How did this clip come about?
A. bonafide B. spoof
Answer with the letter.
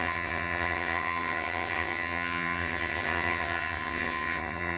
B